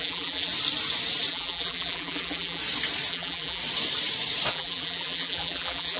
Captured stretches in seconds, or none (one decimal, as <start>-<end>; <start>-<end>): 0.5-1.3; 2.6-3.1; 3.6-4.5